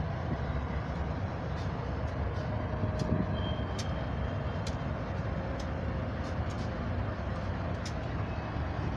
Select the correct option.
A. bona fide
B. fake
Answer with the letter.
A